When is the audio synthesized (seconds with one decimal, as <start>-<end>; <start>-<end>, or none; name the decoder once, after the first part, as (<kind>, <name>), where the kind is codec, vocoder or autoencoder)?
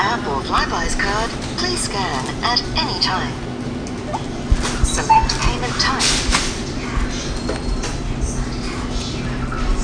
none